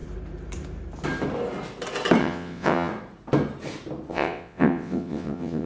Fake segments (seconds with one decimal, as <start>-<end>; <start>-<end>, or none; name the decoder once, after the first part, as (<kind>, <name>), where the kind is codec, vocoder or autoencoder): 2.2-2.9 (vocoder, WaveNeXt); 4.1-5.7